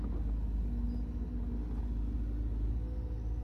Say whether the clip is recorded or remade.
recorded